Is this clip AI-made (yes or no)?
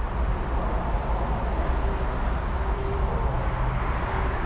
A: no